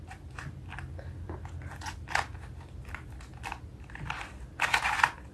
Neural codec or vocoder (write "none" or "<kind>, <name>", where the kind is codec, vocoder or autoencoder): none